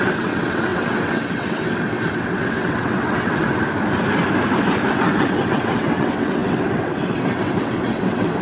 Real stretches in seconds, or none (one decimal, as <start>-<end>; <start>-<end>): 3.6-4.9